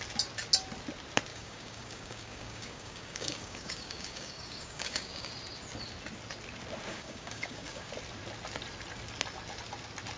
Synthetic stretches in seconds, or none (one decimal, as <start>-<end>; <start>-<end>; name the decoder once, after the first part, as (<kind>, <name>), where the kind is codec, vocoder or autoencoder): 1.3-5.3 (codec, DAC); 6.9-7.9